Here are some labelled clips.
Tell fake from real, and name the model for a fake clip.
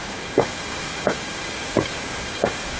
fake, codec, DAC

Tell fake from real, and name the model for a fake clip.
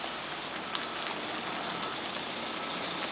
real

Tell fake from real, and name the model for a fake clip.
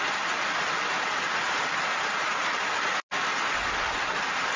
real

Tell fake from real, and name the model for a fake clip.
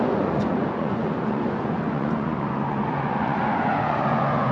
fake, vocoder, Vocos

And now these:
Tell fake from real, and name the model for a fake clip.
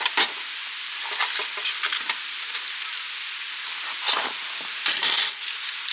real